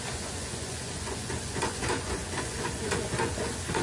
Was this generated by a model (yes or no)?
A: yes